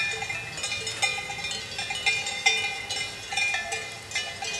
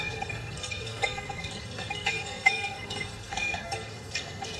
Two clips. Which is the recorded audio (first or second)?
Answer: first